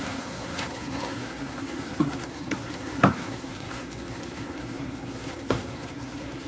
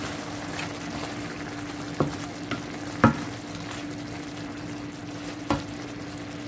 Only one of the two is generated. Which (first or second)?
first